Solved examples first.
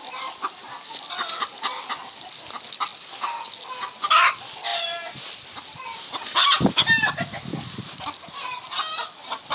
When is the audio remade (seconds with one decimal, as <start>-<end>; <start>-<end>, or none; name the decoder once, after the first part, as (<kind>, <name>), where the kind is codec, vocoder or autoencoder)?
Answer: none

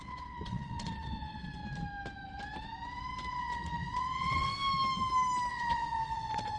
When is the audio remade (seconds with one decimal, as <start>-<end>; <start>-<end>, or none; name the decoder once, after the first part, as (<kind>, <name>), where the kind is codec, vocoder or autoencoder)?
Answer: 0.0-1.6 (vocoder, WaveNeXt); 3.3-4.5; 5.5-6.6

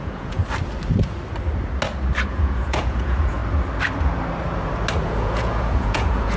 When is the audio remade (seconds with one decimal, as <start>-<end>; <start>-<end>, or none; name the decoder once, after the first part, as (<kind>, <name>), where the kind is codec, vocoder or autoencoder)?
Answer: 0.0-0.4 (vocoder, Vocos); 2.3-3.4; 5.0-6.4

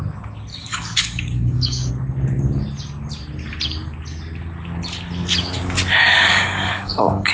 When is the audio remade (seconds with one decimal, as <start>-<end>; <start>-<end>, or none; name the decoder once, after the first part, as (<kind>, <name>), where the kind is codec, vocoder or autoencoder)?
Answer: 0.5-1.9 (codec, DAC); 6.0-7.3

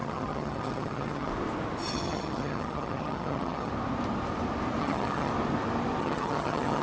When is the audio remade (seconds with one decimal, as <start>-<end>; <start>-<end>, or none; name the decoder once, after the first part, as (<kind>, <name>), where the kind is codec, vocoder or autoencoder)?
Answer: 0.0-1.3 (vocoder, HiFi-GAN); 1.9-3.7; 4.8-5.3; 6.0-6.8

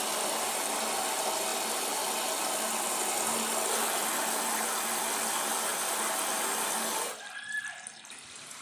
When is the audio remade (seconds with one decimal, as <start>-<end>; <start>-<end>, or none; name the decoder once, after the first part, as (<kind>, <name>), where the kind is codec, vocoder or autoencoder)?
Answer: none